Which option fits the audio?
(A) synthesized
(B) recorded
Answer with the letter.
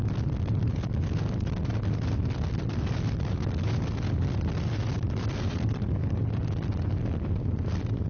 B